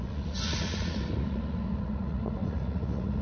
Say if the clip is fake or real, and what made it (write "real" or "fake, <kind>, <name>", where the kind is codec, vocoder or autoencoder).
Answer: fake, vocoder, Vocos